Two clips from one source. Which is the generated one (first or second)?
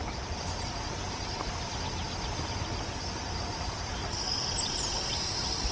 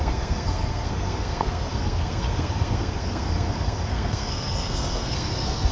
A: second